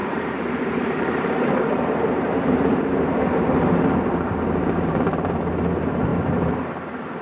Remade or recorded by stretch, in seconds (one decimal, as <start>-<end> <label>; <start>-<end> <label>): 0.0-2.8 remade; 2.8-4.6 recorded; 4.6-5.3 remade; 5.3-6.1 recorded; 6.1-7.2 remade